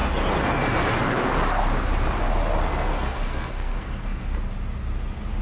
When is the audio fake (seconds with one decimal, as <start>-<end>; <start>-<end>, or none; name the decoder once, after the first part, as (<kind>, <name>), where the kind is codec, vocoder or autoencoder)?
2.9-4.4 (codec, SNAC)